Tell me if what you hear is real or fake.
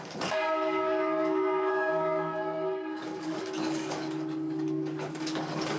fake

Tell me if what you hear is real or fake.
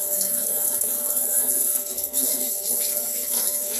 fake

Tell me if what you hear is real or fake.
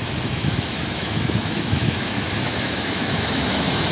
fake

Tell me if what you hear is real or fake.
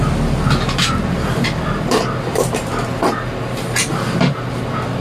real